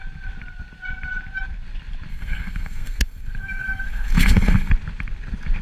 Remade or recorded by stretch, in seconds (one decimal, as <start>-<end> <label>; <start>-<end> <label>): 0.0-2.1 recorded; 2.1-4.7 remade; 4.7-5.6 recorded